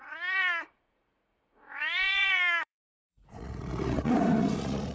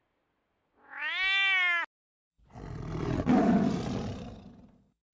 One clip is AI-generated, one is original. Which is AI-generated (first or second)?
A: first